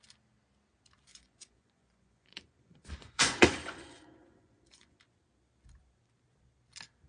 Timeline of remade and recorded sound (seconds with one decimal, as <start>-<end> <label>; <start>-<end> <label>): 0.0-1.1 recorded; 1.1-5.0 remade; 5.0-7.1 recorded